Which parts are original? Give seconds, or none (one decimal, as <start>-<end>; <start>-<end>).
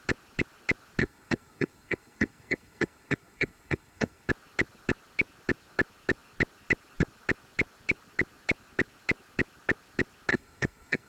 0.0-1.0; 4.3-10.3